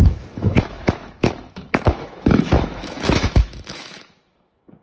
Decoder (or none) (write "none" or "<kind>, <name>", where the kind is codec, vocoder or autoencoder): autoencoder, DAC-VAE